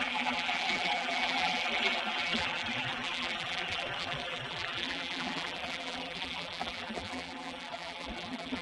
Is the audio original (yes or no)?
no